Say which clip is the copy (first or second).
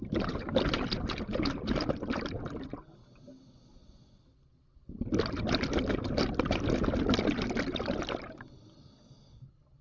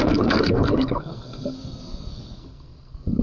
second